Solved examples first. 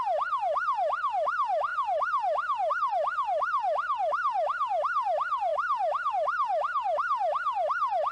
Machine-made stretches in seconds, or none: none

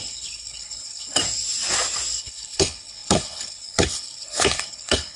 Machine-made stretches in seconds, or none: 0.0-1.2 (codec, HILCodec); 2.2-5.2

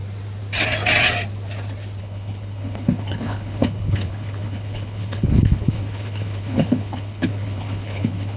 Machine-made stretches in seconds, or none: 2.0-8.4 (codec, HILCodec)

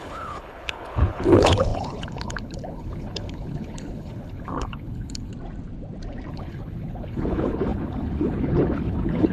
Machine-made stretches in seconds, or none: 0.0-5.3 (codec, HILCodec); 6.3-9.3